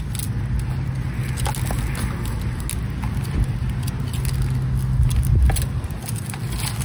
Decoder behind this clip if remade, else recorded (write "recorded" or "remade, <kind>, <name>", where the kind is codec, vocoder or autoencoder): recorded